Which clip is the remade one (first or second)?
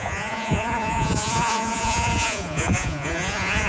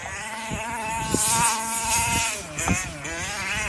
first